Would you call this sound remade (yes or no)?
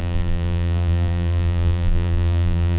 yes